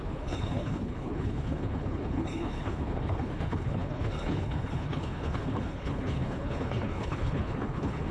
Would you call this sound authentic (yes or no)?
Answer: no